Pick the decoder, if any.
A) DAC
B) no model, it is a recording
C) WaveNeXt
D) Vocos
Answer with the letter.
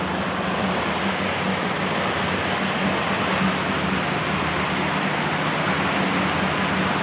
B